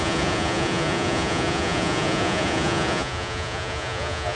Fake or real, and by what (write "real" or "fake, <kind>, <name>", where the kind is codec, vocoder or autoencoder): fake, vocoder, Vocos